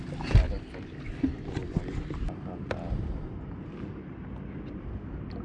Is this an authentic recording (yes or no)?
yes